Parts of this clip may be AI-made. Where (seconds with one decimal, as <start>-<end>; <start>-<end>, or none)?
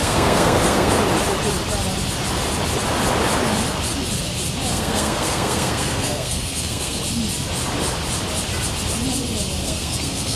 0.0-0.9; 4.7-7.0; 9.6-10.4